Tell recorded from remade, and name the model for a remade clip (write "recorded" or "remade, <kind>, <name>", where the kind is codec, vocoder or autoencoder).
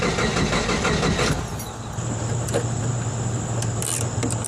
recorded